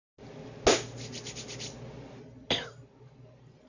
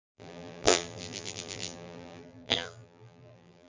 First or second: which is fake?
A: second